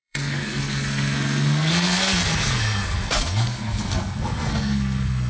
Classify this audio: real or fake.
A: fake